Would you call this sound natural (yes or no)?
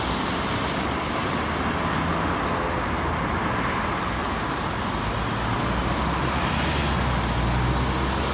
yes